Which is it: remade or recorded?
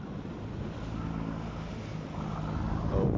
recorded